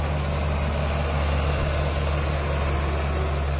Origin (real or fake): real